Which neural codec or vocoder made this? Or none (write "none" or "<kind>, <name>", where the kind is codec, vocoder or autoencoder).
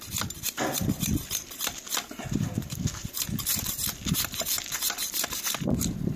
none